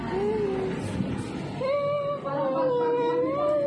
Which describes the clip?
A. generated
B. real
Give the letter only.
B